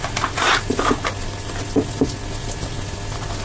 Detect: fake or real real